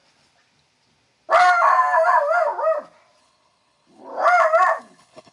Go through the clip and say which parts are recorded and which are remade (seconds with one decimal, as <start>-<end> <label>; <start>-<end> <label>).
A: 0.0-3.2 recorded; 3.2-4.1 remade; 4.1-4.8 recorded; 4.8-5.3 remade